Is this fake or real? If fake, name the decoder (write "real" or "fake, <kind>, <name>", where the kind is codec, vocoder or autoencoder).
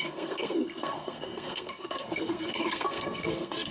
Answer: fake, codec, SNAC